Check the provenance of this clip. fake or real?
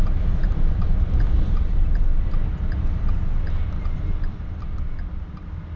real